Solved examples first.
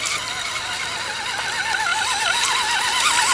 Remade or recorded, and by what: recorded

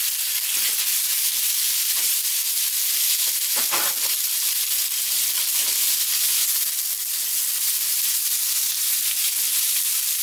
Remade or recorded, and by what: recorded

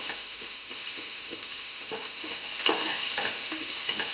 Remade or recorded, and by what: remade, autoencoder, DAC-VAE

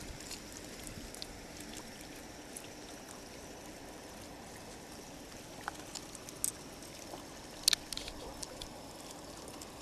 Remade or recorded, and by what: recorded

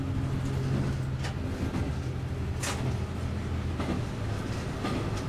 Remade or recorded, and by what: recorded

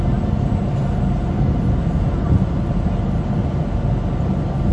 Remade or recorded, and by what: recorded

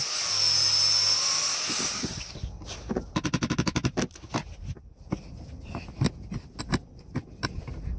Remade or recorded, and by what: recorded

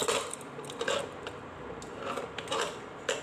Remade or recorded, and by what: recorded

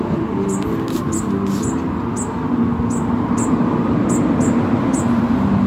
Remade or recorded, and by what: recorded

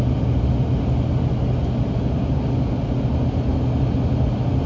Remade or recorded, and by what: recorded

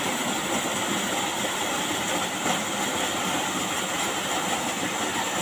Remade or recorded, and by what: recorded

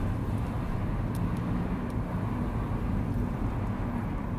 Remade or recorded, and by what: recorded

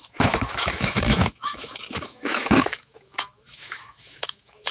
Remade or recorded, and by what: remade, autoencoder, DAC-VAE